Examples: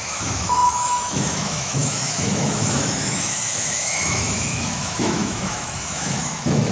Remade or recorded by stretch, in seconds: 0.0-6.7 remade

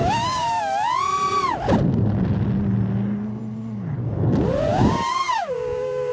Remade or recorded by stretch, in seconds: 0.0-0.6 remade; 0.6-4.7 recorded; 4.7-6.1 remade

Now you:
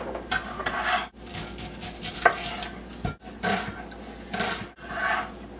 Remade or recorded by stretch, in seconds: 0.0-1.3 recorded; 1.3-2.0 remade; 2.0-5.6 recorded